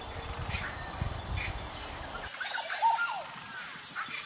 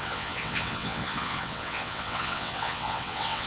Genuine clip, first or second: first